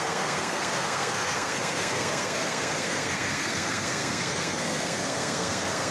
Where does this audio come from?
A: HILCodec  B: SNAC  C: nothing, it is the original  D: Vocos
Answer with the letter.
B